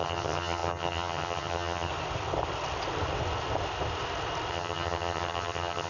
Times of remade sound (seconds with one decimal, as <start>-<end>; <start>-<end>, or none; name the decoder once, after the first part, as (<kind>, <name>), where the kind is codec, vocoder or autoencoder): 0.0-1.9 (vocoder, HiFi-GAN); 4.5-5.9